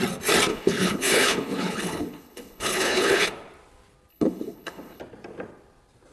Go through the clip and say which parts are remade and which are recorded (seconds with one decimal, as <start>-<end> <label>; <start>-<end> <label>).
0.0-0.5 recorded; 0.5-3.3 remade; 3.3-4.1 recorded; 4.1-5.0 remade; 5.0-6.1 recorded